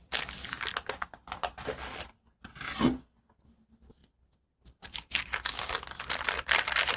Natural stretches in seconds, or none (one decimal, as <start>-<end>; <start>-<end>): 0.0-7.0